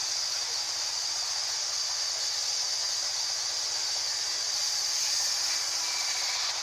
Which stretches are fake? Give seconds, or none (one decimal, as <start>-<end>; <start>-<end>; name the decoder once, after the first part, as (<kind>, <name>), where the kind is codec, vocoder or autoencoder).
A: none